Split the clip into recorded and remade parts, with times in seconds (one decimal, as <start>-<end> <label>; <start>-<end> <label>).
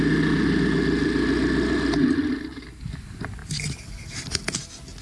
0.0-5.0 recorded